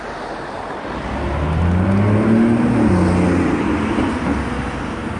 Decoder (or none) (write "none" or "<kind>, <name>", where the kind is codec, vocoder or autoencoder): none